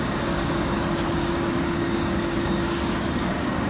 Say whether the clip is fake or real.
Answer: fake